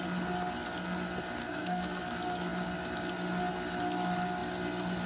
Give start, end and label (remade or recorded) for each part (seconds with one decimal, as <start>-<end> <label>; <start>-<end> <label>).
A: 0.0-1.4 recorded; 1.4-2.0 remade; 2.0-5.1 recorded